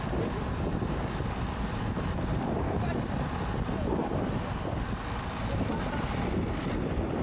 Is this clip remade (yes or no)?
no